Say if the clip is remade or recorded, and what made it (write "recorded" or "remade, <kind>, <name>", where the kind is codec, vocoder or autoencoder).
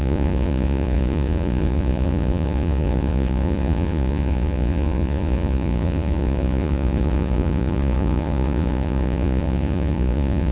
remade, vocoder, Vocos